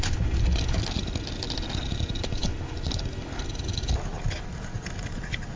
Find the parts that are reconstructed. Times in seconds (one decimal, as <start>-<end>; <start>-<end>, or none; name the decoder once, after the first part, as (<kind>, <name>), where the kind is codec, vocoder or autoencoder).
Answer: none